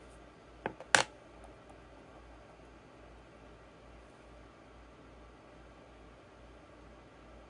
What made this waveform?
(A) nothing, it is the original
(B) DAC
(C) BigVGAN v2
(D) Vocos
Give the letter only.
A